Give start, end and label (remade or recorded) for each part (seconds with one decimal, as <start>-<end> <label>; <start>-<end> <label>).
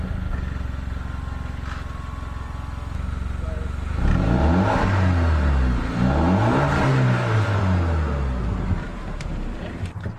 0.0-6.9 recorded; 6.9-7.6 remade; 7.6-8.9 recorded; 8.9-10.2 remade